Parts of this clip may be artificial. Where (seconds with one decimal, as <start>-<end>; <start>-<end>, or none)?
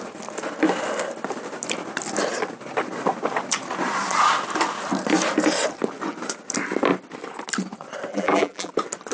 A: 8.1-8.7